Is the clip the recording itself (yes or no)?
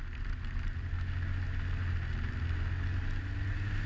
yes